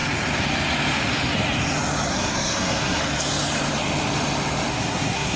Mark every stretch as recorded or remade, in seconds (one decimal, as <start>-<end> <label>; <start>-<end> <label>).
0.0-2.1 recorded; 2.1-3.0 remade; 3.0-4.7 recorded; 4.7-5.4 remade